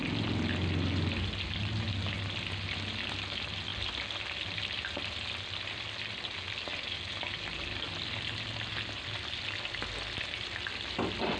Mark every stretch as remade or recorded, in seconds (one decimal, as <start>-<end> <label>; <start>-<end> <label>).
0.0-11.4 recorded